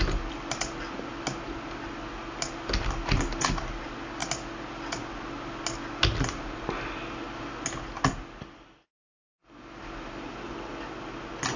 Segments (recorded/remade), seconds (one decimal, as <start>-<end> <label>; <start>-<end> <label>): 0.0-11.6 recorded